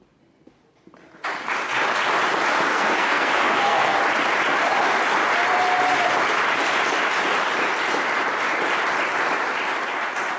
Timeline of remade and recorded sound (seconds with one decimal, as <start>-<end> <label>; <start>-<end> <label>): 0.0-2.7 recorded; 2.7-4.0 remade; 4.0-10.4 recorded